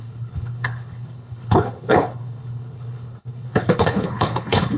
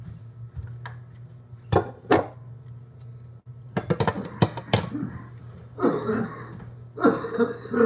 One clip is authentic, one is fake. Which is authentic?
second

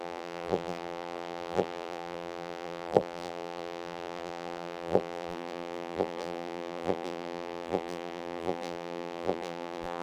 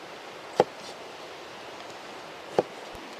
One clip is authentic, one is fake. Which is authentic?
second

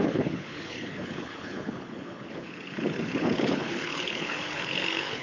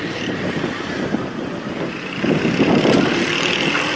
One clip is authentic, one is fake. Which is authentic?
second